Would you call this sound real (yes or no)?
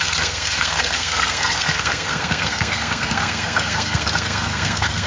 no